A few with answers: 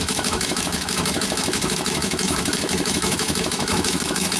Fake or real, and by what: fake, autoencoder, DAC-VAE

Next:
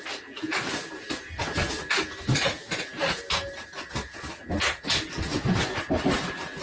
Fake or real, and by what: real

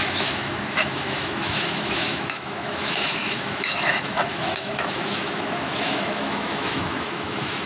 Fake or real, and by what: fake, autoencoder, DAC-VAE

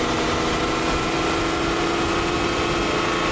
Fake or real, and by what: real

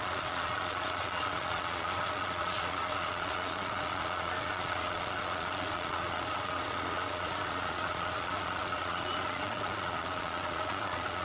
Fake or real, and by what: fake, vocoder, Vocos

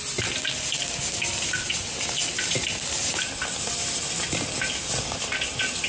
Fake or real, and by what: real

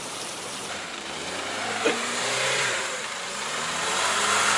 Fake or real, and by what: fake, vocoder, BigVGAN v2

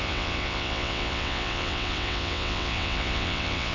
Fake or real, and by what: fake, vocoder, WaveNeXt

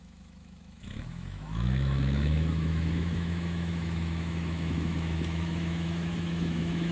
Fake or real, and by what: fake, autoencoder, DAC-VAE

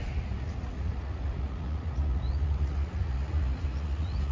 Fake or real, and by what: fake, vocoder, Vocos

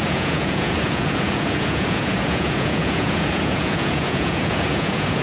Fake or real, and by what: fake, vocoder, Vocos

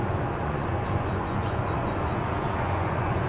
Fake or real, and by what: fake, vocoder, Vocos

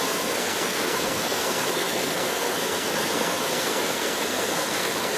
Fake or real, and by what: fake, codec, SNAC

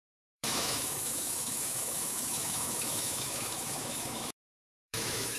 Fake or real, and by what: fake, autoencoder, DAC-VAE